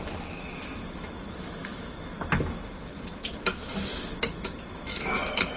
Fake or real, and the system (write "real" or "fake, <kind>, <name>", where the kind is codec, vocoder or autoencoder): fake, autoencoder, DAC-VAE